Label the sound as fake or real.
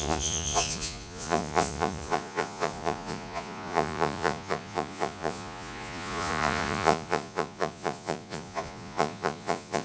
fake